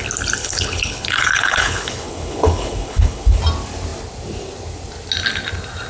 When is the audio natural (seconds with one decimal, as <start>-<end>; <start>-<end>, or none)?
0.0-0.4; 3.4-5.9